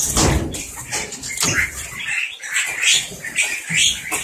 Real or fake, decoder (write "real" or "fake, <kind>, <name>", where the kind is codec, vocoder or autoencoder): real